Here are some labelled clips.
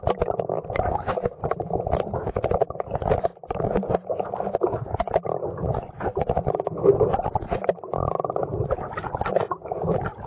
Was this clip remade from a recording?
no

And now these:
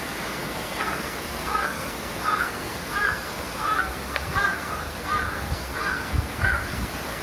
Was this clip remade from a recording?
yes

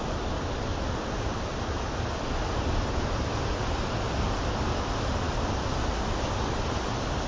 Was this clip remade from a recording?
no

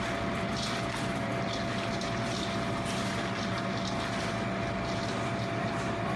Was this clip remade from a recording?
no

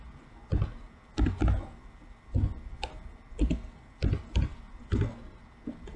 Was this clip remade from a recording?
no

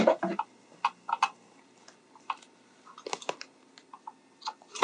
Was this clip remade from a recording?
no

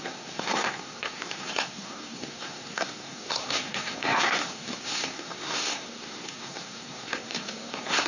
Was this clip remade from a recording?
yes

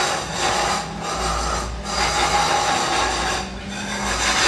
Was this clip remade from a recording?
no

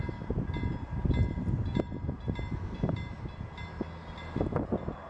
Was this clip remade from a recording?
no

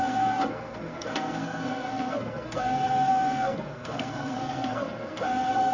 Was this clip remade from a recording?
yes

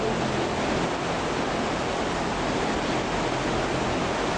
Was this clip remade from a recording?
no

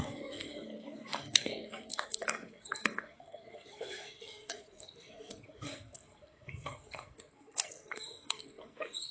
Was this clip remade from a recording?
yes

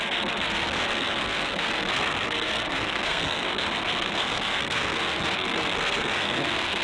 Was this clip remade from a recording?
yes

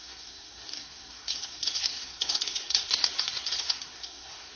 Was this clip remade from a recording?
yes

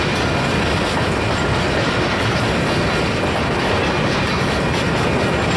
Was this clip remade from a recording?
no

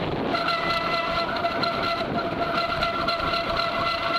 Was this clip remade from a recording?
no